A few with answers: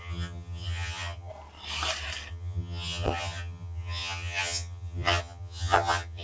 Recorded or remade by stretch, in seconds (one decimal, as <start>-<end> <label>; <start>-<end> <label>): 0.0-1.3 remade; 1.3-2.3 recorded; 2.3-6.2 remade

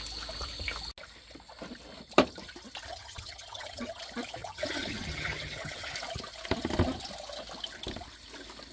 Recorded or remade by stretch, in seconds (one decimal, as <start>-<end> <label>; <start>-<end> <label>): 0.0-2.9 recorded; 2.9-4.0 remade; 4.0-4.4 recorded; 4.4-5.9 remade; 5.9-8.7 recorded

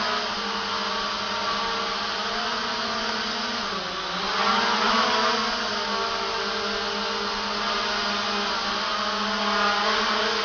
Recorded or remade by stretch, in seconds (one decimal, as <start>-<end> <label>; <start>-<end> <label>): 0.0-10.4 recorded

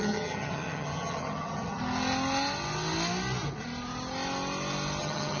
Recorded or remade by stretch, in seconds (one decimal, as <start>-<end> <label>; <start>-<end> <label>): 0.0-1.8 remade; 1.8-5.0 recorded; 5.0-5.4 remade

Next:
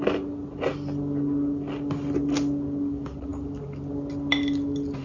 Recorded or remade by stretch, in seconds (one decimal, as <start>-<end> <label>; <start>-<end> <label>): 0.0-5.0 recorded

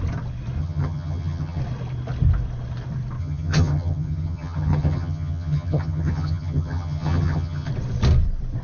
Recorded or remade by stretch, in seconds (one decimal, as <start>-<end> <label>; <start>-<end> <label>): 0.0-0.6 recorded; 0.6-1.6 remade; 1.6-3.2 recorded; 3.2-7.7 remade; 7.7-8.6 recorded